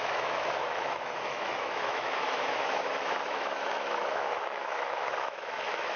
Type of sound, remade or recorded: remade